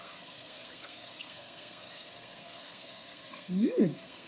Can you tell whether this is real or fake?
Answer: fake